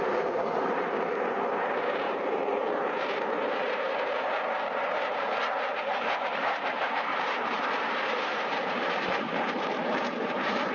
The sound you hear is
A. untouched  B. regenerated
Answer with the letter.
B